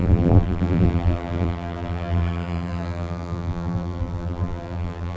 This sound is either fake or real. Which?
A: fake